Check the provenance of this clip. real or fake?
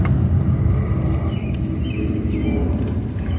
real